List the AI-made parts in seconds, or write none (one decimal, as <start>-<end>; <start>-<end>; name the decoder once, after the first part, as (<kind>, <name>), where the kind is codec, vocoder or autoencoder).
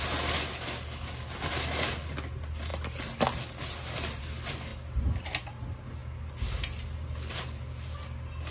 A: none